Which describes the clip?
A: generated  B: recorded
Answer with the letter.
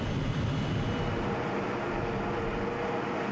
B